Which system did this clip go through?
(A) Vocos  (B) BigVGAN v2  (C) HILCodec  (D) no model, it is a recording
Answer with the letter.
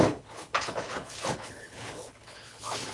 C